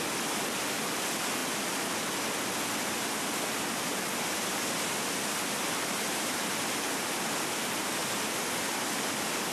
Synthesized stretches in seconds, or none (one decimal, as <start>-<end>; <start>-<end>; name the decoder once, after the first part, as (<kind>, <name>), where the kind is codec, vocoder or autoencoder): 0.0-1.4 (vocoder, BigVGAN v2); 5.7-8.0

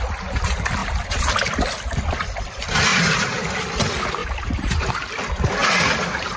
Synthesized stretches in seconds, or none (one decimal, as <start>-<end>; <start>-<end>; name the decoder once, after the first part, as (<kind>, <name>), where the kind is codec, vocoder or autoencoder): 0.8-1.3 (vocoder, BigVGAN v2); 2.9-3.4; 4.2-4.9

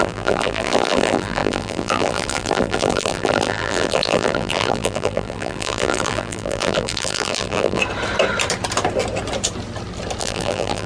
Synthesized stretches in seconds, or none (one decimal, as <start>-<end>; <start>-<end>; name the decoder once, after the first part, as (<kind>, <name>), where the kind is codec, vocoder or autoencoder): 0.0-7.8 (vocoder, BigVGAN v2); 10.2-10.9

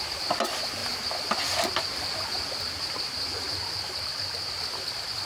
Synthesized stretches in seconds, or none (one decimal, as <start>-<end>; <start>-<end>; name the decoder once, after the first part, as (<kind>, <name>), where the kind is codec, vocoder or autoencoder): none

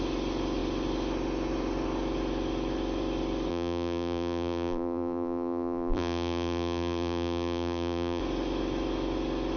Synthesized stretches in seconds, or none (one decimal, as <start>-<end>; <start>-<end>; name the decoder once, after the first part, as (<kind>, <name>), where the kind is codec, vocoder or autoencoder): 3.5-8.2 (vocoder, BigVGAN v2)

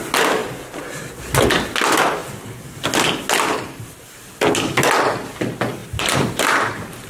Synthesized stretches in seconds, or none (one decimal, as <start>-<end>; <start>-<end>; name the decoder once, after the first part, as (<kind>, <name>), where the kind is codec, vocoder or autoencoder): 5.8-7.1 (vocoder, BigVGAN v2)

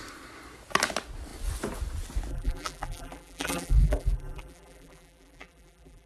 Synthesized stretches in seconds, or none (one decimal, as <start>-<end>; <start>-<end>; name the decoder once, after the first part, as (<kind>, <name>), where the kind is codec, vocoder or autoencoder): 2.3-6.1 (vocoder, BigVGAN v2)

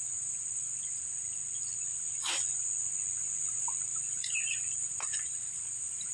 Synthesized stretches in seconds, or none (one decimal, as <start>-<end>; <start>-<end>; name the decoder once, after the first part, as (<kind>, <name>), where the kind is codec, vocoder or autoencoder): 1.4-2.1 (vocoder, BigVGAN v2); 3.9-4.9